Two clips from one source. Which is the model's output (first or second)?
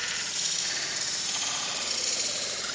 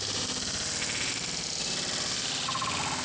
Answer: first